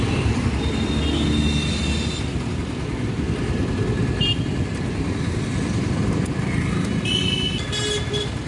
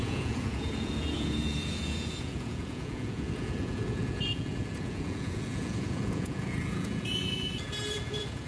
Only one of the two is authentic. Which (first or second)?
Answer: first